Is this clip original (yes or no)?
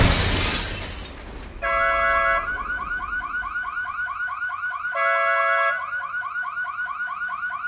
yes